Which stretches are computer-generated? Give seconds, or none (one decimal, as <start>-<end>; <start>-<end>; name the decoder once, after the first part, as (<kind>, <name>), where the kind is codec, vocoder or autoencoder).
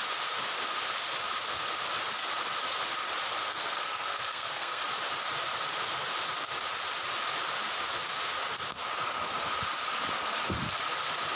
3.5-4.8 (codec, SNAC)